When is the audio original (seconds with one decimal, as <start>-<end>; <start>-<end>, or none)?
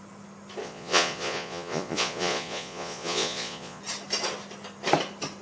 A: 0.0-0.6; 3.8-5.4